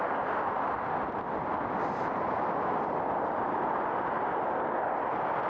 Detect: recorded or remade recorded